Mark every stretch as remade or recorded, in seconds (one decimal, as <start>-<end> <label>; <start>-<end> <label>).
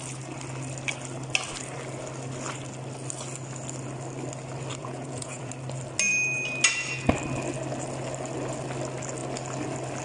0.0-4.8 recorded; 4.8-5.5 remade; 5.5-10.0 recorded